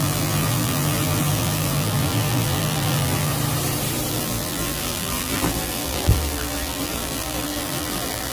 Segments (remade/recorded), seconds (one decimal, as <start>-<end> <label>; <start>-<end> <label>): 0.0-3.3 remade; 3.3-4.1 recorded; 4.1-8.3 remade